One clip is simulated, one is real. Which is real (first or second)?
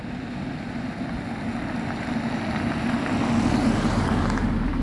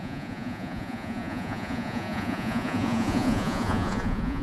first